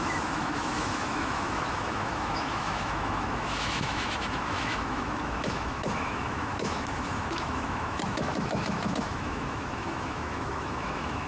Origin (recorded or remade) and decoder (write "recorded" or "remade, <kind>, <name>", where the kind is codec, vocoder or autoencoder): remade, autoencoder, DAC-VAE